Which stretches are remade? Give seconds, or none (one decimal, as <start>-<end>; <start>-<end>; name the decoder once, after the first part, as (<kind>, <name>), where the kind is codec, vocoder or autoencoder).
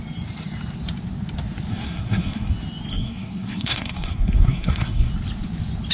1.7-2.5 (codec, SNAC); 2.9-5.1